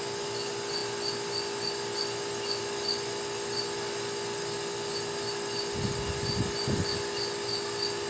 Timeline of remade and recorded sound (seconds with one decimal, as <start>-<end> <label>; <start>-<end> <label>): 0.0-8.1 recorded